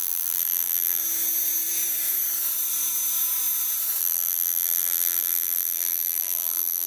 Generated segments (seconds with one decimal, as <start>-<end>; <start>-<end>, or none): 0.0-1.0; 4.0-6.9